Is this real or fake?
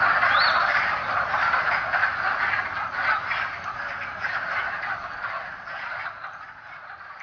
real